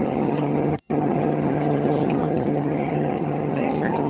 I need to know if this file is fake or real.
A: fake